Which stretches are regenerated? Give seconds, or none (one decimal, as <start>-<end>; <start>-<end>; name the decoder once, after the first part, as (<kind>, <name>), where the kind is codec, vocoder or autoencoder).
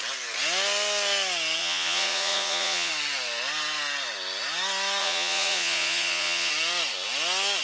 1.6-2.9 (vocoder, Vocos); 5.0-6.5